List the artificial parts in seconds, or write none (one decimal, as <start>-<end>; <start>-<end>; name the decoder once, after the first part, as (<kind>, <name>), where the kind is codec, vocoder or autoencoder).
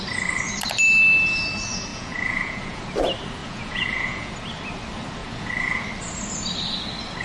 1.9-2.8 (vocoder, Vocos); 3.4-4.3; 5.2-5.8